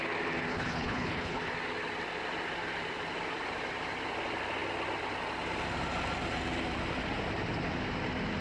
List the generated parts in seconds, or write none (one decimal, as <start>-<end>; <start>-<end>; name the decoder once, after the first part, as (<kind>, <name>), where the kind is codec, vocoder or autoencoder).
0.5-1.4 (codec, HILCodec)